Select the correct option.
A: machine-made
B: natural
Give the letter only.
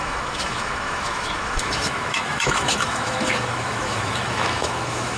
A